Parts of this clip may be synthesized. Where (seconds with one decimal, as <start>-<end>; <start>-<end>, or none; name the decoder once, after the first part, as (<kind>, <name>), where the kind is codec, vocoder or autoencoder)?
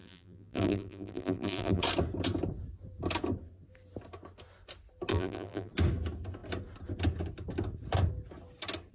0.0-1.8 (vocoder, BigVGAN v2); 5.1-5.7